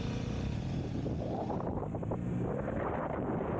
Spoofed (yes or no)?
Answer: yes